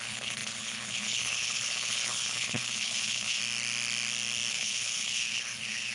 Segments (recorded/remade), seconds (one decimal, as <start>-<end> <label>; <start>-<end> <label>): 0.0-3.4 remade; 3.4-4.5 recorded; 4.5-5.9 remade